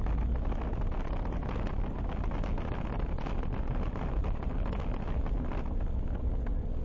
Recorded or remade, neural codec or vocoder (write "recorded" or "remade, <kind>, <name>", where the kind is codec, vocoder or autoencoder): recorded